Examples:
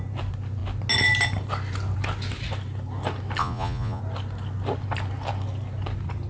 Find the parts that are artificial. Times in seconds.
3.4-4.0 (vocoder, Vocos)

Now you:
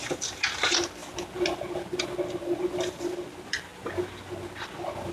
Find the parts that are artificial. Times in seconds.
none

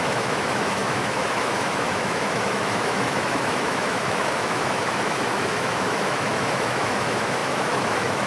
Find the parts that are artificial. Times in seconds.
0.0-8.3 (autoencoder, DAC-VAE)

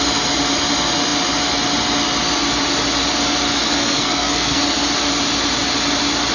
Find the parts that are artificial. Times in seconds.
3.7-4.6 (codec, SNAC)

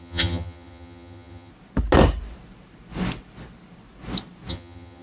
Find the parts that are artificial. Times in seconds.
0.0-1.5 (vocoder, HiFi-GAN); 4.5-5.0

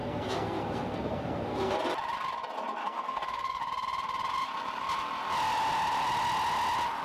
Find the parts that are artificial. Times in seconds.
0.0-1.8 (codec, SNAC); 2.8-3.6